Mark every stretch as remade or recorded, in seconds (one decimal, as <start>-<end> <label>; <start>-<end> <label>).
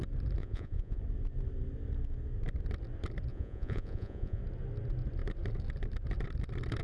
0.0-0.4 recorded; 0.4-1.0 remade; 1.0-3.3 recorded; 3.3-4.4 remade; 4.4-6.8 recorded